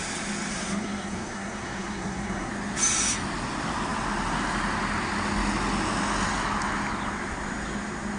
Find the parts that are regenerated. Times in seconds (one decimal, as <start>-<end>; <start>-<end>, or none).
0.5-2.5